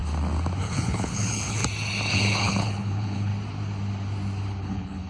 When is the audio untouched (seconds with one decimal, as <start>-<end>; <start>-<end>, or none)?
0.0-0.6; 1.6-2.1; 3.3-4.6